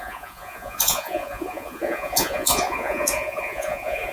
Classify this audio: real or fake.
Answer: fake